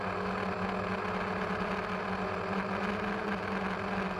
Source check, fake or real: real